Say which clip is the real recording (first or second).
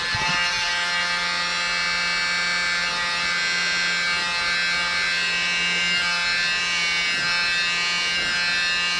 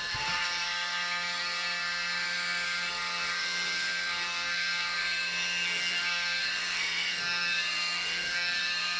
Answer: first